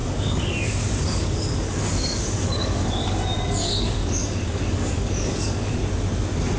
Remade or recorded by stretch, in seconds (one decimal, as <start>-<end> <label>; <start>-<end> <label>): 0.0-3.1 remade; 3.1-3.6 recorded; 3.6-5.7 remade; 5.7-6.6 recorded

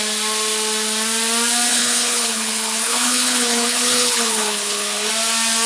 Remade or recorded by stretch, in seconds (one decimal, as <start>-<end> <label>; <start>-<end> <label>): 0.0-1.7 recorded; 1.7-5.1 remade; 5.1-5.7 recorded

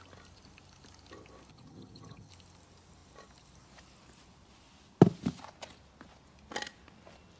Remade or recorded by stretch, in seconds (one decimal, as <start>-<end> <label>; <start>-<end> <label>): 0.0-1.5 recorded; 1.5-2.3 remade; 2.3-7.4 recorded

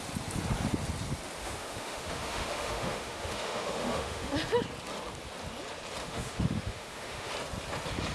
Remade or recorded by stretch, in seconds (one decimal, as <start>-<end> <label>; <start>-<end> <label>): 0.0-1.4 recorded; 1.4-4.3 remade; 4.3-6.0 recorded; 6.0-7.3 remade; 7.3-8.1 recorded

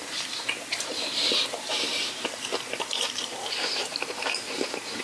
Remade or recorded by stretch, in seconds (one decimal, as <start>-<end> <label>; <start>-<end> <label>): 0.0-5.0 remade

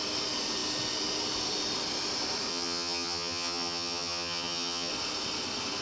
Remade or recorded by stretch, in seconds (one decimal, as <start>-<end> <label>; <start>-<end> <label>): 0.0-2.5 recorded; 2.5-4.9 remade; 4.9-5.8 recorded

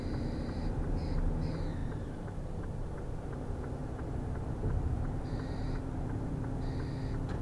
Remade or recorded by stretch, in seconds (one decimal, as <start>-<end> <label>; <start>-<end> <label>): 0.0-1.8 recorded; 1.8-3.4 remade; 3.4-3.8 recorded; 3.8-6.4 remade; 6.4-7.4 recorded